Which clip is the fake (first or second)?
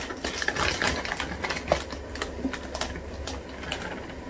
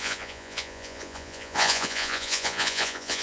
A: second